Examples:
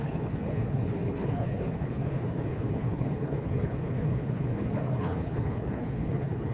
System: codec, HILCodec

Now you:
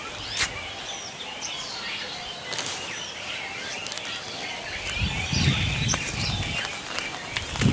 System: none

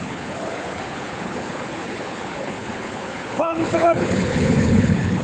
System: codec, HILCodec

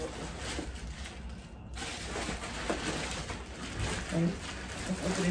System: none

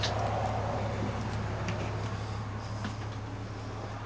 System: none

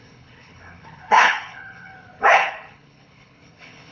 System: codec, HILCodec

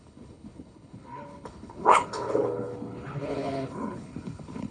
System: codec, HILCodec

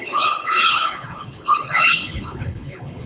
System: codec, HILCodec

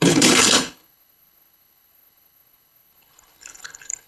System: codec, HILCodec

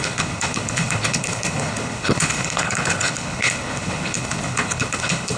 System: codec, HILCodec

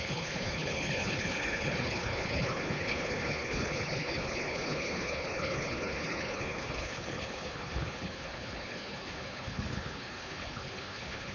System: codec, HILCodec